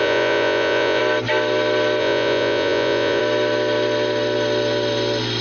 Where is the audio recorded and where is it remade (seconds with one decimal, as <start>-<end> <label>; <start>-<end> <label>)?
0.0-1.0 remade; 1.0-2.0 recorded; 2.0-3.2 remade; 3.2-5.4 recorded